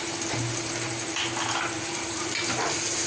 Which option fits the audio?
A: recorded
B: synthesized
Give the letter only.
B